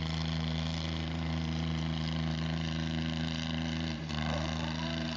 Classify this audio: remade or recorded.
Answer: remade